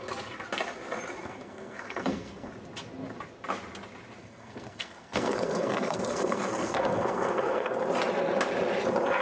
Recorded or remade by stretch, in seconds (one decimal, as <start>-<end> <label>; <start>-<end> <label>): 0.0-1.2 recorded; 1.2-2.5 remade; 2.5-4.2 recorded; 4.2-7.7 remade; 7.7-9.2 recorded